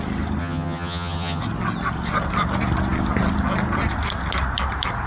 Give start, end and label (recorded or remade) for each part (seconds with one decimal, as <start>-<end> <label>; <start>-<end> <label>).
0.0-0.4 recorded; 0.4-1.4 remade; 1.4-5.1 recorded

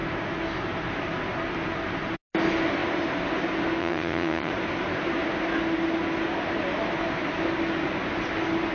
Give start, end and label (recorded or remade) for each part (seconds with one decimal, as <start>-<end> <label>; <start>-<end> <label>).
0.0-3.8 recorded; 3.8-4.5 remade; 4.5-8.7 recorded

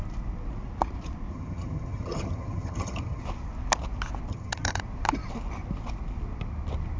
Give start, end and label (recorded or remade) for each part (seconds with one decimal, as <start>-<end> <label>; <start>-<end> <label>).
0.0-1.3 recorded; 1.3-3.2 remade; 3.2-4.3 recorded; 4.3-4.8 remade; 4.8-7.0 recorded

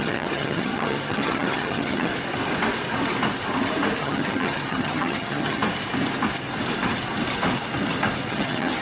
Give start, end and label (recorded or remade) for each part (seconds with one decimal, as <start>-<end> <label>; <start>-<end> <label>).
0.0-2.1 remade; 2.1-4.0 recorded; 4.0-5.6 remade; 5.6-8.3 recorded; 8.3-8.8 remade

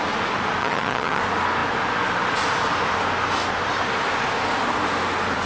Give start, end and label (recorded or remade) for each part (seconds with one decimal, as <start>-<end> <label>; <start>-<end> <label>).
0.0-0.6 recorded; 0.6-1.2 remade; 1.2-5.5 recorded

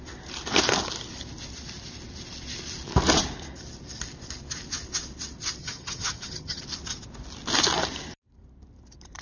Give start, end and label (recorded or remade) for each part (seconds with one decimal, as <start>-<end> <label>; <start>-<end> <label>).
0.0-5.6 recorded; 5.6-6.6 remade; 6.6-9.2 recorded

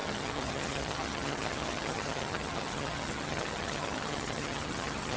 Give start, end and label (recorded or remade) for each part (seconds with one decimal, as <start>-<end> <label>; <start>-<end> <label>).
0.0-5.2 remade